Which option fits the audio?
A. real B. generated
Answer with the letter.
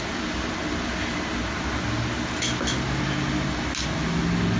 A